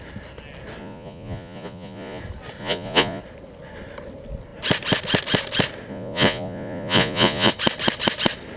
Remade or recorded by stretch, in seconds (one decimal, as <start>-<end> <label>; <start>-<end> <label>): 0.0-0.8 recorded; 0.8-2.2 remade; 2.2-2.6 recorded; 2.6-3.2 remade; 3.2-5.9 recorded; 5.9-7.5 remade; 7.5-8.6 recorded